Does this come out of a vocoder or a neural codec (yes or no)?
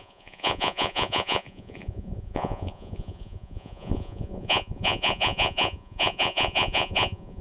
yes